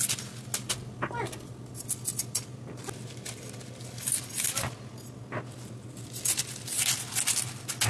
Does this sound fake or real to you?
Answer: real